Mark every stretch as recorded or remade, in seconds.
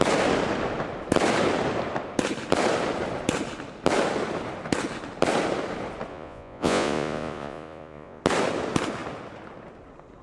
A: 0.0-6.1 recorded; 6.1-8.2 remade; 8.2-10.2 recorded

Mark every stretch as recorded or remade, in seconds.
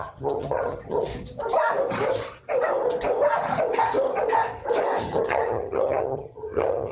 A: 0.0-1.1 remade; 1.1-5.0 recorded; 5.0-6.9 remade